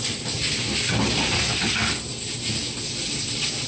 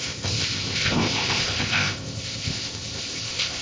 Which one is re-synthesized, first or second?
second